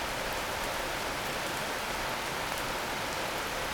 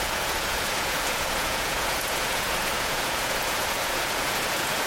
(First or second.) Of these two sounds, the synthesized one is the second